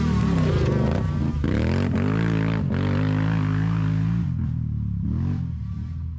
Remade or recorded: recorded